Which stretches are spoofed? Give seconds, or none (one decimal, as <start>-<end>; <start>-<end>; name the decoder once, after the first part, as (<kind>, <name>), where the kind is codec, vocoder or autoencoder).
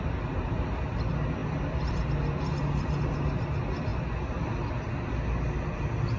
none